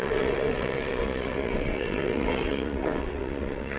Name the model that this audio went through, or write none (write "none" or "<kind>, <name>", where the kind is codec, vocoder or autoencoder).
vocoder, WaveNeXt